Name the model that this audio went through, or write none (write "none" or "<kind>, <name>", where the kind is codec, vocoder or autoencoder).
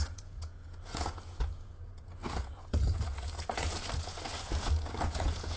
vocoder, Vocos